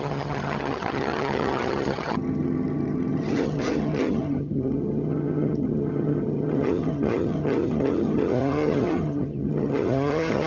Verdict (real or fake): fake